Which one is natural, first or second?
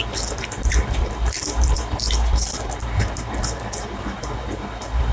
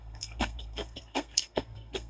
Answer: first